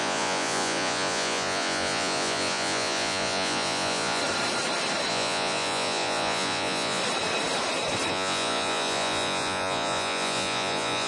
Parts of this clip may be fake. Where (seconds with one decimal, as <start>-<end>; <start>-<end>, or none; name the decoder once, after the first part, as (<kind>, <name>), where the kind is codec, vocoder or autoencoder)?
0.0-4.2 (vocoder, Vocos); 5.1-7.0; 8.1-11.1